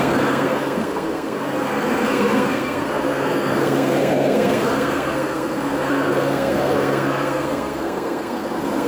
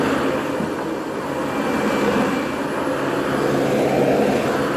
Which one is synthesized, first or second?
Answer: first